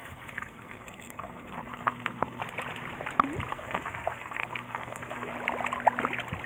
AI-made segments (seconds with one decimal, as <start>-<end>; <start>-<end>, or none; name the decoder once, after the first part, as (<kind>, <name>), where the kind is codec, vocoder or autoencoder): 0.0-2.4 (codec, SNAC); 3.5-5.3